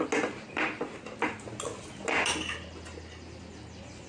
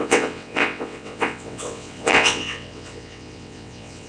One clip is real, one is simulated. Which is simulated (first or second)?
second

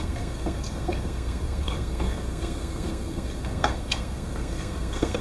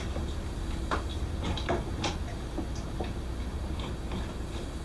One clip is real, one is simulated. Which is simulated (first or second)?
first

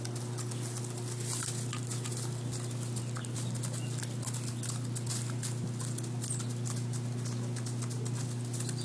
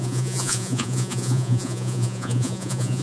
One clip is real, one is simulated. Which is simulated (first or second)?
second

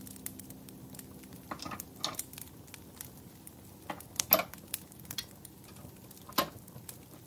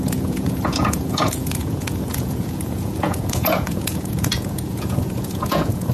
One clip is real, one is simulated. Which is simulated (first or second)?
second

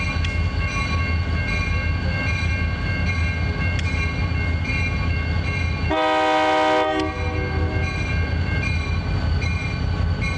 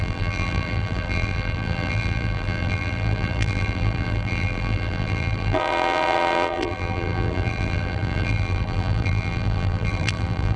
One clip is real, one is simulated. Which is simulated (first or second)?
second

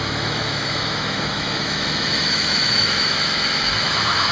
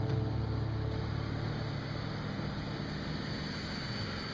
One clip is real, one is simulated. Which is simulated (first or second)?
first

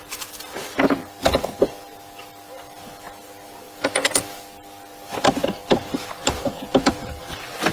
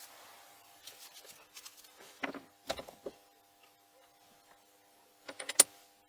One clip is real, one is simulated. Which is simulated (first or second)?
first